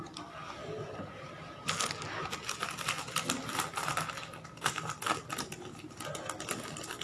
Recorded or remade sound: recorded